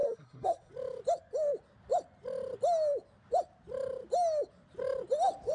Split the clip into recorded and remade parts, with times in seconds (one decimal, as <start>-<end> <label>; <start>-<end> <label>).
0.0-0.7 remade; 0.7-5.5 recorded